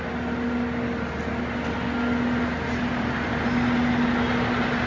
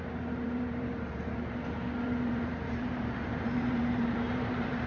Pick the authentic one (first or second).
first